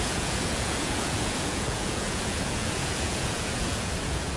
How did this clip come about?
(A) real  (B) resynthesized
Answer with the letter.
B